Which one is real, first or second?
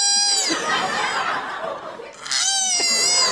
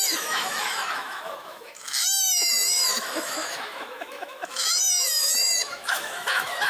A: first